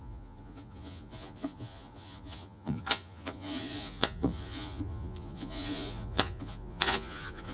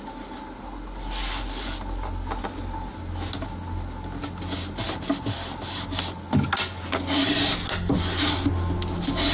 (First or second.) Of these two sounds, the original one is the second